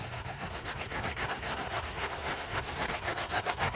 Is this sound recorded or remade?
remade